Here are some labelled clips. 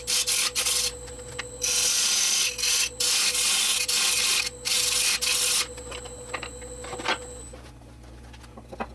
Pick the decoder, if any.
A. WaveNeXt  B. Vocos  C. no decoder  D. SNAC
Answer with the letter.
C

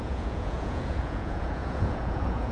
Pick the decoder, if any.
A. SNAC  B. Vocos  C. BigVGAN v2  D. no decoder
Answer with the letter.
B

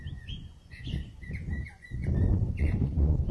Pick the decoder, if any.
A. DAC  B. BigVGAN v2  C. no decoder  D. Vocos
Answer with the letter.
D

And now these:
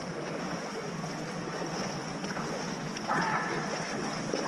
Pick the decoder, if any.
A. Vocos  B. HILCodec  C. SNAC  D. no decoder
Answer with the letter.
A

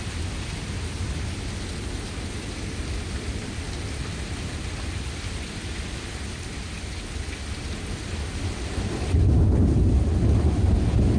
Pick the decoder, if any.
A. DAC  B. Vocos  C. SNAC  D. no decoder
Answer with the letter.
D